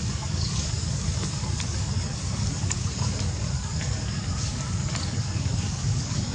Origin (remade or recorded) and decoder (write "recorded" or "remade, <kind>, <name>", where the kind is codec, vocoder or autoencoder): remade, codec, DAC